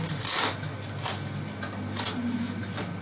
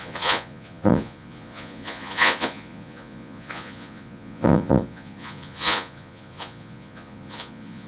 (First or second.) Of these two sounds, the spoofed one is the second